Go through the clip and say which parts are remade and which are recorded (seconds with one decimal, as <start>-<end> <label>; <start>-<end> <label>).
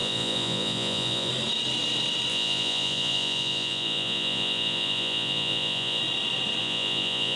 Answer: 0.0-1.3 remade; 1.3-2.3 recorded; 2.3-6.0 remade; 6.0-6.6 recorded; 6.6-7.4 remade